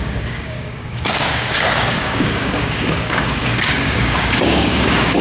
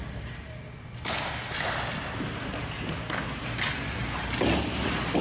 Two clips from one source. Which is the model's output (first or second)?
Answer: first